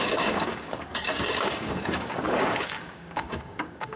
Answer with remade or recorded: remade